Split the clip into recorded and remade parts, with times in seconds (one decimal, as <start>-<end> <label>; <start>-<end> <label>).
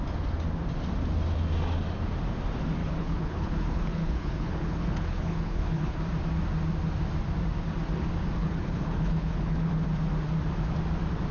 0.0-2.8 recorded; 2.8-6.0 remade; 6.0-8.4 recorded; 8.4-9.7 remade; 9.7-11.3 recorded